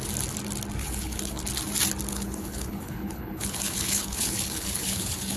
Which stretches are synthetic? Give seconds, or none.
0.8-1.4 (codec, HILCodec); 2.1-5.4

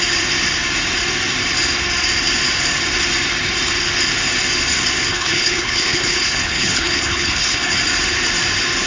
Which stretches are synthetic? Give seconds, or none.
5.1-7.8 (codec, HILCodec)

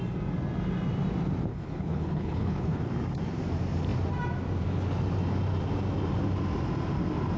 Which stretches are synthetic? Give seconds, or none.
1.5-2.9 (codec, HILCodec)

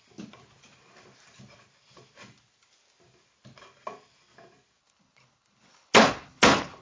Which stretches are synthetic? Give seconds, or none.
4.8-6.8 (codec, HILCodec)

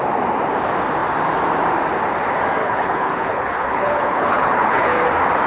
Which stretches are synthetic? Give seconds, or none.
2.6-5.1 (codec, HILCodec)

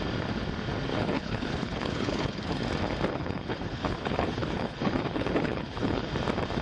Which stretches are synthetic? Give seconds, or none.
0.9-2.6 (codec, HILCodec); 3.1-6.1

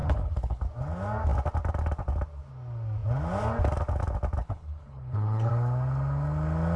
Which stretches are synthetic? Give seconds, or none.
0.0-0.6 (codec, HILCodec); 4.4-5.5